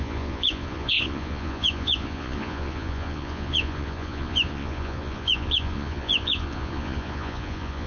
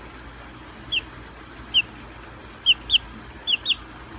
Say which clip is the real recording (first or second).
second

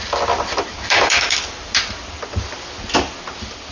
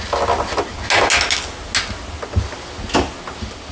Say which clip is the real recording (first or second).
second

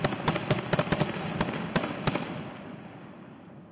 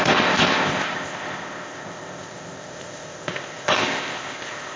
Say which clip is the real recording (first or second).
first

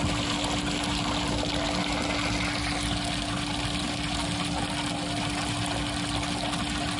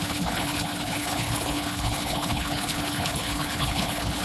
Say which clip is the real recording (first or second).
first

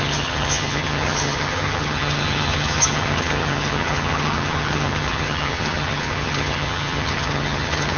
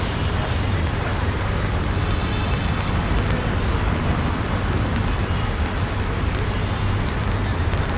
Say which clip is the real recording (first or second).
second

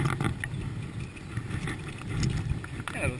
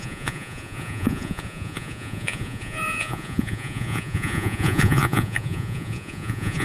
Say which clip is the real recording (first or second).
first